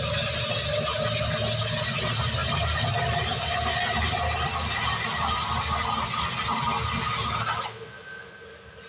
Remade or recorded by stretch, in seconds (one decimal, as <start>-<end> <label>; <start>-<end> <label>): 0.0-2.4 recorded; 2.4-3.5 remade; 3.5-8.9 recorded

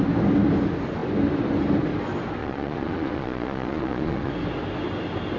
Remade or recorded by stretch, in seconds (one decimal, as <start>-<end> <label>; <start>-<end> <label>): 0.0-2.4 recorded; 2.4-4.3 remade; 4.3-5.4 recorded

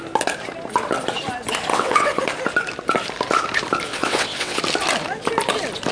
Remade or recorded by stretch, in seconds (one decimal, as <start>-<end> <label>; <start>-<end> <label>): 0.0-1.7 recorded; 1.7-2.2 remade; 2.2-3.9 recorded; 3.9-4.6 remade; 4.6-5.9 recorded

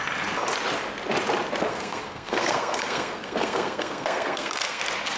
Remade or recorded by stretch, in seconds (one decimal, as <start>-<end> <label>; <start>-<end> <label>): 0.0-1.7 recorded; 1.7-4.8 remade; 4.8-5.2 recorded